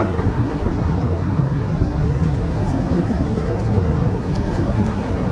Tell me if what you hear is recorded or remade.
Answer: remade